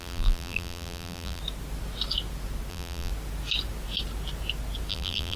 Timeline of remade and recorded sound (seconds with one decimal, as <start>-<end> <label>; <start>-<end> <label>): 0.0-1.4 remade; 1.4-2.7 recorded; 2.7-3.1 remade; 3.1-4.9 recorded; 4.9-5.4 remade